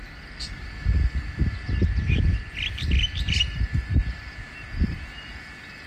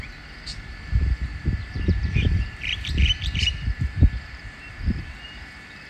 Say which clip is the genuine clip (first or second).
first